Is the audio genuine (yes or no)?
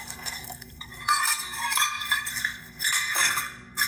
no